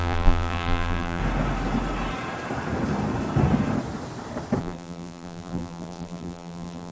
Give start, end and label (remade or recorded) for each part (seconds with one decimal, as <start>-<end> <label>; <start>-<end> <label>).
0.0-1.2 remade; 1.2-4.6 recorded; 4.6-6.9 remade